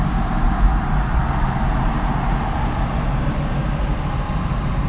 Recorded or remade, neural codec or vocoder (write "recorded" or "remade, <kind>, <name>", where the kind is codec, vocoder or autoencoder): recorded